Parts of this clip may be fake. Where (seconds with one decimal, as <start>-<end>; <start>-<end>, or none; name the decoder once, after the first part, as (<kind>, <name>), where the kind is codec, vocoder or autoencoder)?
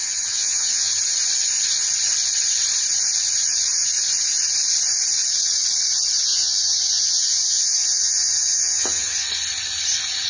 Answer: 0.0-0.9 (vocoder, Vocos); 6.3-9.3